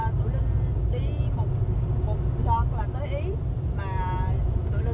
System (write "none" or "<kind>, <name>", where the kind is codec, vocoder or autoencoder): none